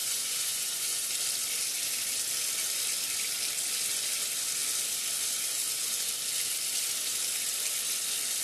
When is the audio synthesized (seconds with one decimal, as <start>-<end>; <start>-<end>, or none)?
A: 0.0-1.1